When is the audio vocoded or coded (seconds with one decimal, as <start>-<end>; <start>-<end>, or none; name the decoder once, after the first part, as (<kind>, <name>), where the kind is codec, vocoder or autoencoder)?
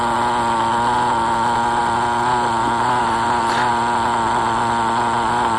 none